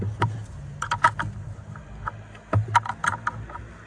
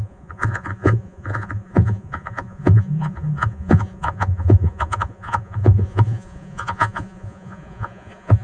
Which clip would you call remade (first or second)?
second